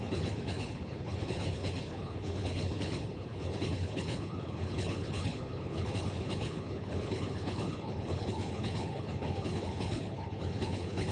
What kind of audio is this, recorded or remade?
remade